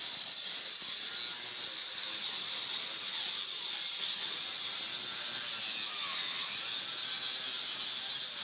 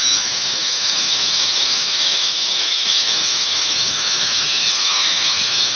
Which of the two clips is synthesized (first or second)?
second